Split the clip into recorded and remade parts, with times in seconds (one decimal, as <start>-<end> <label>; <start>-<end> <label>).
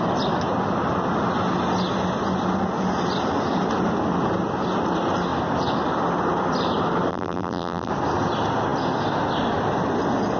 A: 0.0-7.1 recorded; 7.1-7.9 remade; 7.9-10.4 recorded